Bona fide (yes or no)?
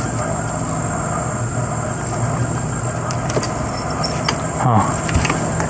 yes